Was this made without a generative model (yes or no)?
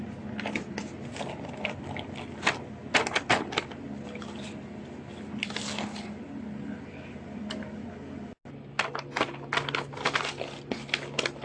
yes